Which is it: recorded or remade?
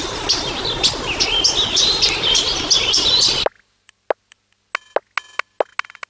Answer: recorded